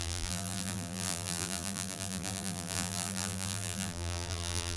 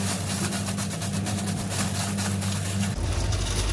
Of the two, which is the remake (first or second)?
first